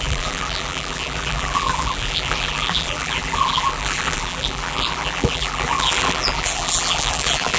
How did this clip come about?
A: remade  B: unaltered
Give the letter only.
A